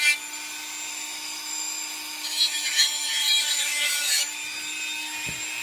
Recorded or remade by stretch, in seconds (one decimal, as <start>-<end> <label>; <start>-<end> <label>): 0.0-0.9 recorded; 0.9-4.3 remade; 4.3-5.6 recorded